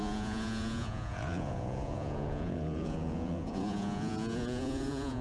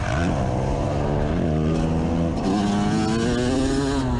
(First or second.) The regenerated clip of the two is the first